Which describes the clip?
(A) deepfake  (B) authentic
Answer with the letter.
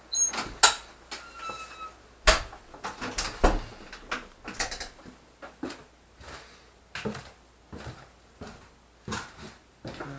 B